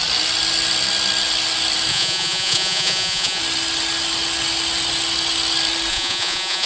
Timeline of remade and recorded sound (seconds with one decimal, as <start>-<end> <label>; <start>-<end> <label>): 0.0-1.9 recorded; 1.9-3.4 remade; 3.4-5.9 recorded; 5.9-6.7 remade